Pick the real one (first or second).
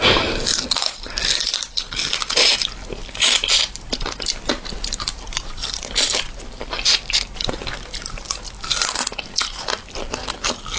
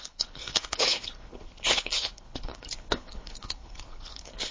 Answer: first